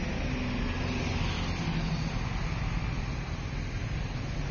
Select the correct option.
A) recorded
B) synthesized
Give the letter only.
A